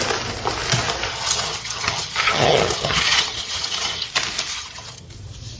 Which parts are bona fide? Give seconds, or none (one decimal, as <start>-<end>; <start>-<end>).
0.0-1.1; 4.1-4.5; 5.1-5.6

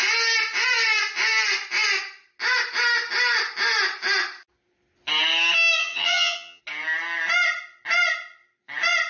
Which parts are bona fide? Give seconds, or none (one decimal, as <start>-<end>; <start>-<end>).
0.0-5.8; 6.6-9.1

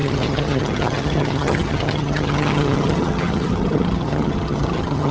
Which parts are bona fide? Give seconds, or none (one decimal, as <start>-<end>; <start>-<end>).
none

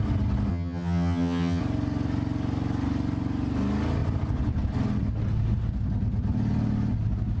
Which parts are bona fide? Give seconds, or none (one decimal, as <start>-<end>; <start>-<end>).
0.0-0.5; 1.6-7.4

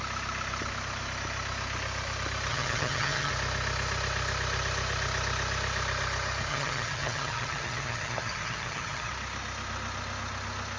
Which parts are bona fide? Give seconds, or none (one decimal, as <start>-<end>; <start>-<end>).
0.0-2.5; 3.3-6.5; 9.1-10.8